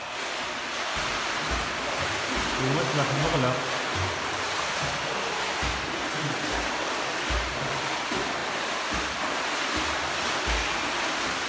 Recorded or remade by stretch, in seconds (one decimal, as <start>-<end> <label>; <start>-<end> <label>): 0.0-3.9 recorded; 3.9-6.4 remade; 6.4-11.5 recorded